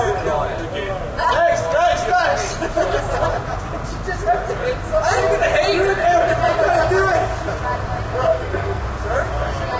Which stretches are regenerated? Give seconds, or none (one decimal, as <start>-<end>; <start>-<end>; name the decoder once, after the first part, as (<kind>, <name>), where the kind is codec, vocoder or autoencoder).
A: 8.3-8.8 (codec, SNAC)